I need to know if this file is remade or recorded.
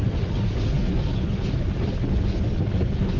recorded